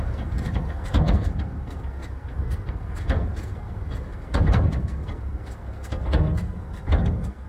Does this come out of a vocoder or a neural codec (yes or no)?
yes